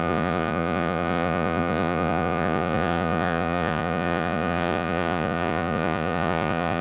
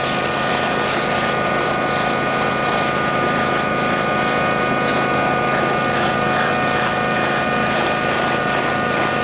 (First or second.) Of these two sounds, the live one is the second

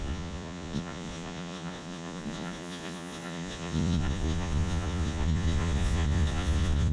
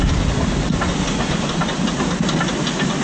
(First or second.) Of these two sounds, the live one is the second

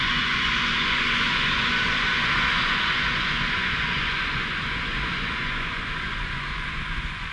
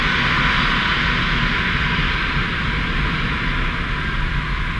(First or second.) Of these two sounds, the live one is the second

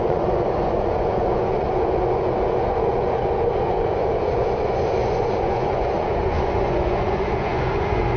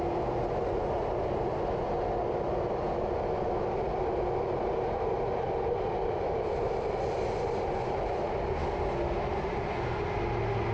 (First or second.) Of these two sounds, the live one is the second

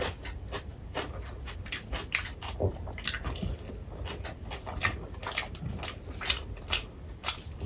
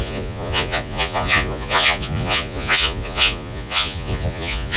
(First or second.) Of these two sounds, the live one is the first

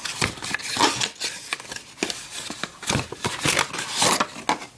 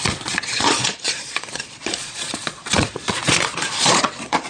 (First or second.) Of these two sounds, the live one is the first